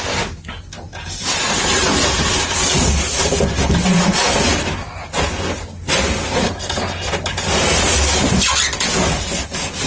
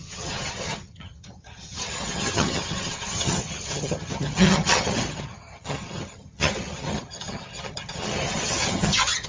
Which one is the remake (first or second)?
second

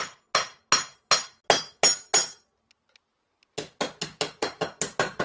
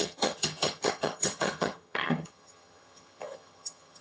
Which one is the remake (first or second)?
second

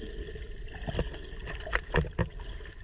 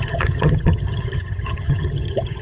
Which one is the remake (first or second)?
second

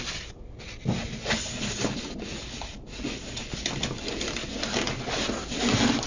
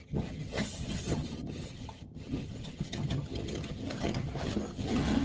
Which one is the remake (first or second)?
second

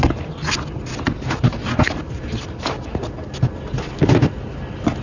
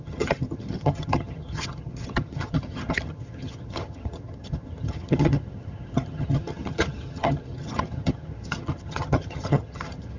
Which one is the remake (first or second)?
second